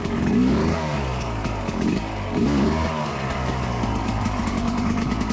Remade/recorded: remade